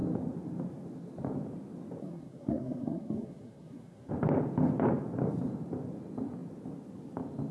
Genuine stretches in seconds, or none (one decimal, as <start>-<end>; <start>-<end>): 0.0-2.0; 4.1-7.5